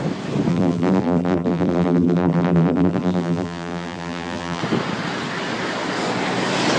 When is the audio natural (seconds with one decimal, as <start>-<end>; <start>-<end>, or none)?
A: 0.0-0.5; 4.6-6.8